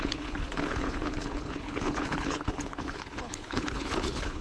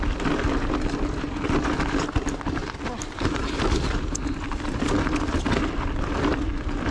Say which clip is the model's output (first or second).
first